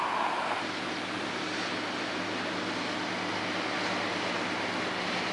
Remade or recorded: recorded